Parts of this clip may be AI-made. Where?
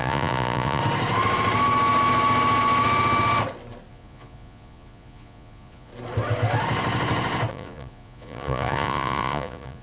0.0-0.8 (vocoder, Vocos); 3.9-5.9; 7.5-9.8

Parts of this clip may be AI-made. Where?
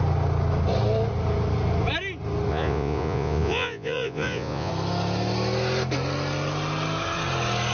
2.5-4.7 (vocoder, Vocos)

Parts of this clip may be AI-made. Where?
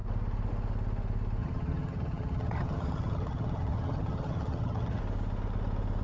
1.4-5.0 (vocoder, HiFi-GAN)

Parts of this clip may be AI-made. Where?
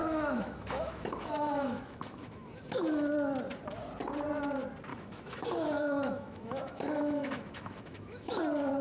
0.0-3.1 (autoencoder, DAC-VAE); 4.9-8.4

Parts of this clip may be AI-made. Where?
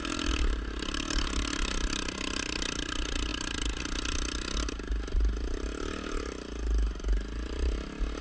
none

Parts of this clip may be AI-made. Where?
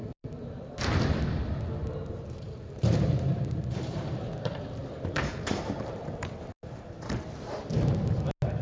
0.0-0.7 (vocoder, BigVGAN v2); 1.8-4.3; 4.8-7.2